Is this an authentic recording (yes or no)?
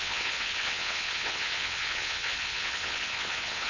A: no